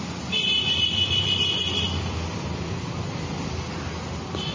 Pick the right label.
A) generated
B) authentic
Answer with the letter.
B